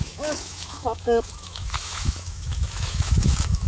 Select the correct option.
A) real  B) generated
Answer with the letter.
B